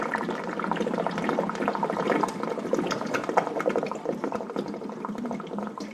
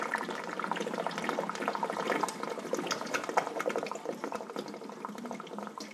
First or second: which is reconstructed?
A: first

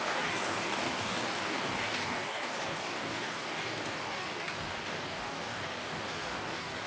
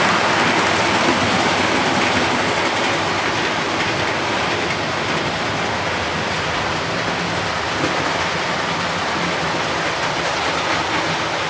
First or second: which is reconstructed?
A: first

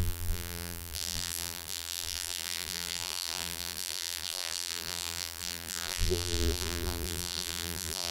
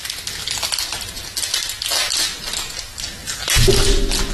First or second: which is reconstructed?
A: first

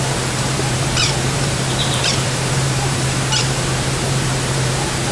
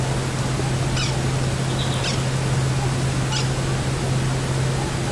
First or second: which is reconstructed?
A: first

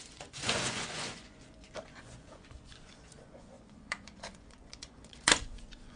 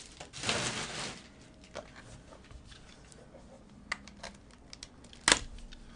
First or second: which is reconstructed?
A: first